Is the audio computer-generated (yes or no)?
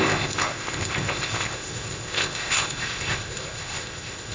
yes